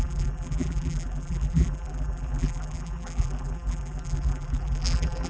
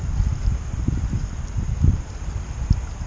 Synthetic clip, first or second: first